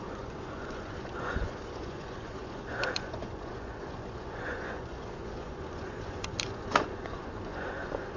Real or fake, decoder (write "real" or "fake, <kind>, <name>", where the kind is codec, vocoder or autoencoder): fake, vocoder, Vocos